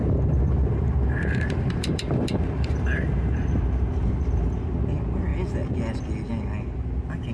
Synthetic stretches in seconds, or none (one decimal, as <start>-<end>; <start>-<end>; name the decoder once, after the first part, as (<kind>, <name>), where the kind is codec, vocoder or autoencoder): 0.0-4.3 (vocoder, BigVGAN v2)